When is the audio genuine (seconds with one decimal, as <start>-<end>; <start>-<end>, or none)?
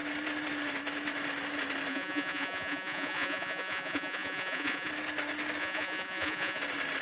0.0-1.9; 4.9-5.6; 6.6-7.0